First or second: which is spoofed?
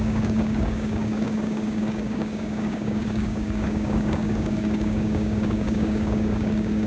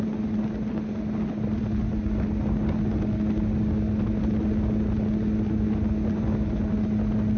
first